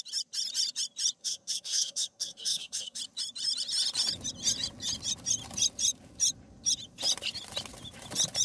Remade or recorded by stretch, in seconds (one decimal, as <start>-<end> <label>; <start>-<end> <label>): 0.0-1.2 recorded; 1.2-3.0 remade; 3.0-8.4 recorded